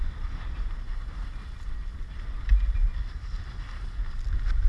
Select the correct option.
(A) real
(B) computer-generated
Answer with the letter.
A